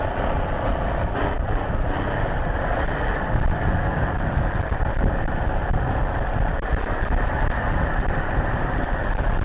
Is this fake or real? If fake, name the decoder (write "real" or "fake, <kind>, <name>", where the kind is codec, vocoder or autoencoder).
real